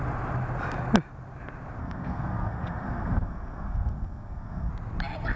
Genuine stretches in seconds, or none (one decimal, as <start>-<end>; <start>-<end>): 0.0-1.8; 4.7-5.4

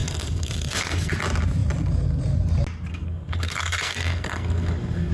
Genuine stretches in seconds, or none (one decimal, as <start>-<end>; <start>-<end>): 1.1-2.9

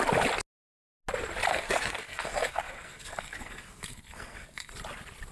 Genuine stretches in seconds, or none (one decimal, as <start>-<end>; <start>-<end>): 0.0-1.5; 4.7-5.3

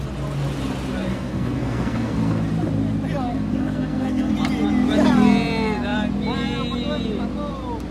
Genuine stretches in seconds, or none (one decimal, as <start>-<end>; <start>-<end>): 0.0-1.1; 2.5-3.3; 4.3-7.9

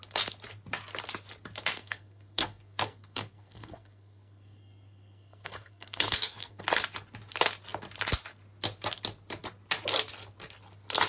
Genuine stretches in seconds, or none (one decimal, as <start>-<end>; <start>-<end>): 0.0-1.8; 6.6-11.1

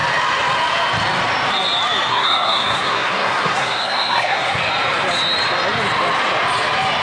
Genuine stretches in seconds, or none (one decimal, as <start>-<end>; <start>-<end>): 0.0-2.1; 4.6-7.0